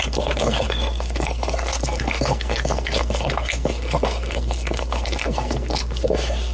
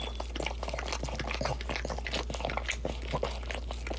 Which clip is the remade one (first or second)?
first